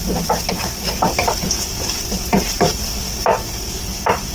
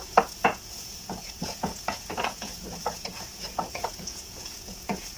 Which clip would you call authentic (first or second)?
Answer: first